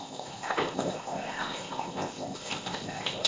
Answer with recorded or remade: remade